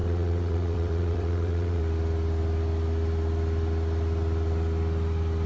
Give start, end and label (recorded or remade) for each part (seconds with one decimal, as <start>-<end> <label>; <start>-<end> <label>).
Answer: 0.0-1.8 remade; 1.8-5.5 recorded